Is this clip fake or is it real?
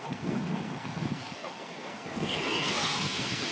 fake